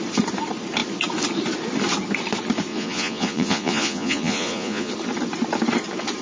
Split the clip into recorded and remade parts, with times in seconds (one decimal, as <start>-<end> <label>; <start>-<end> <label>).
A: 0.0-2.7 recorded; 2.7-4.9 remade; 4.9-6.2 recorded